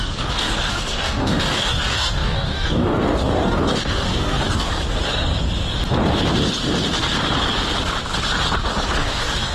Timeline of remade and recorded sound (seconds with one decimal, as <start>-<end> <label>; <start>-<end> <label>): 0.0-4.7 remade; 4.7-9.0 recorded; 9.0-9.5 remade